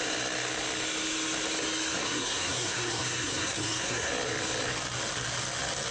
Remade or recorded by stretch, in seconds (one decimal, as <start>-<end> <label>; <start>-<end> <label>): 0.0-2.0 recorded; 2.0-4.1 remade; 4.1-5.9 recorded